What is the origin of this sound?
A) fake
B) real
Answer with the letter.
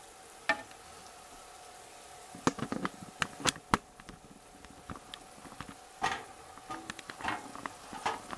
B